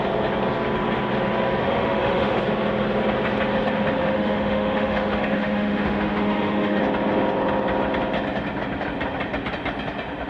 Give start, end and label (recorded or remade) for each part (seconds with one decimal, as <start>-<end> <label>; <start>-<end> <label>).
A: 0.0-1.6 recorded; 1.6-2.4 remade; 2.4-4.0 recorded; 4.0-6.8 remade; 6.8-10.3 recorded